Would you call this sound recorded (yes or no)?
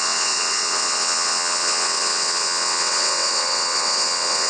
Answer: no